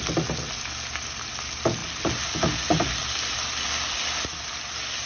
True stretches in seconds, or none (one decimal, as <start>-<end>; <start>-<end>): 0.0-5.1